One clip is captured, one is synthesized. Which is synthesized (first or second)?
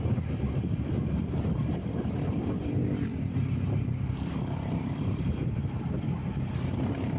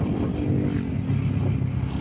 first